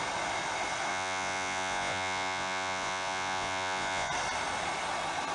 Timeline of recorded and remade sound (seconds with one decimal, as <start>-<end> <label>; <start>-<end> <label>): 0.0-0.9 recorded; 0.9-4.1 remade; 4.1-5.3 recorded